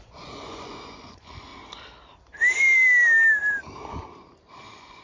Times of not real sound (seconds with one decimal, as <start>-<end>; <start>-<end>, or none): 0.0-1.5; 4.5-5.0